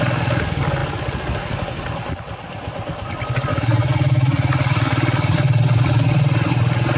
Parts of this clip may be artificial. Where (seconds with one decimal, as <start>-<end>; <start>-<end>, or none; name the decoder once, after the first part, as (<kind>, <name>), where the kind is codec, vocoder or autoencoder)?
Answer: none